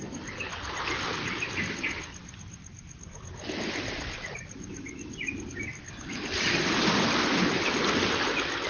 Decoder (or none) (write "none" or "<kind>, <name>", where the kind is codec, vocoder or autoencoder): none